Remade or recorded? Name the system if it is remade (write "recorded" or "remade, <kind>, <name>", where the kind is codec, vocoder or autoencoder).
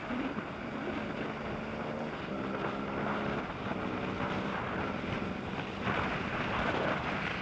recorded